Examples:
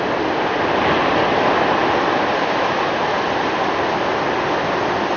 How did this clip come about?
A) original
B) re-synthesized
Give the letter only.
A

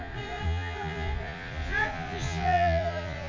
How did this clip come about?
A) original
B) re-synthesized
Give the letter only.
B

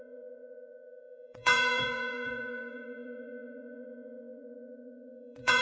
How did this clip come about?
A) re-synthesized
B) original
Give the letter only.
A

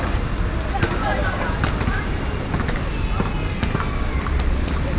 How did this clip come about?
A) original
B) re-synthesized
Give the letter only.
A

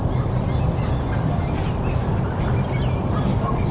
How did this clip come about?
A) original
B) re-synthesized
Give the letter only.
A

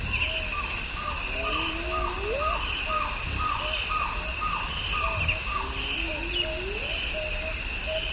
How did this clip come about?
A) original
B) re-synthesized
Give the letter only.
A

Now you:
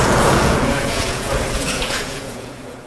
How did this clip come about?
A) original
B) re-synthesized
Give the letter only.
B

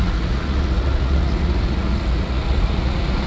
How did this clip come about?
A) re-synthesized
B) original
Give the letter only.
A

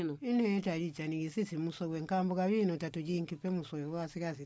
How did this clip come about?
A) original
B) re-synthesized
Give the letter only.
A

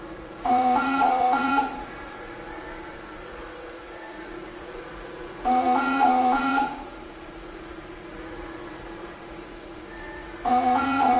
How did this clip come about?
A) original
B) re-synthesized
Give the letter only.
B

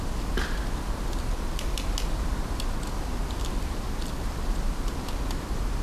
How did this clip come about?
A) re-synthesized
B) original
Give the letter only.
B